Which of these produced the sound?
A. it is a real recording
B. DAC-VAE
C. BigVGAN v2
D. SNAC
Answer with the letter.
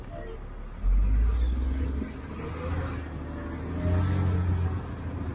A